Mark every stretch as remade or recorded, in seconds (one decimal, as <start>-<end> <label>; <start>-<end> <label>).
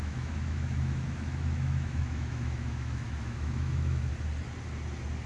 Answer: 0.0-4.1 remade; 4.1-5.3 recorded